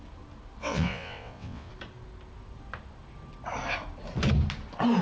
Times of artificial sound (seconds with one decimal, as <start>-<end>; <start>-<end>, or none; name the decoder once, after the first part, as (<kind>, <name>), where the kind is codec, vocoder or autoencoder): 0.6-1.7 (vocoder, WaveNeXt)